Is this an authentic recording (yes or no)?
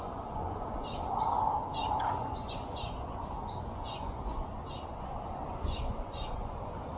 no